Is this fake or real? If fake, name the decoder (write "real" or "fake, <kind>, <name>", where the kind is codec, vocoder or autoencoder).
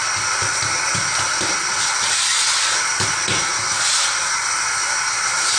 real